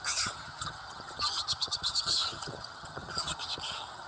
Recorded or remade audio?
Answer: remade